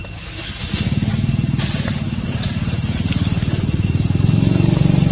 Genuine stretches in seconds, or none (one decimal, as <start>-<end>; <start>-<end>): 0.0-1.1; 4.2-5.1